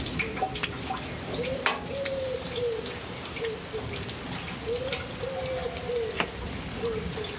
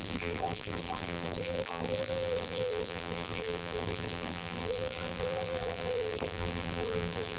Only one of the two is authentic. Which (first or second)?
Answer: first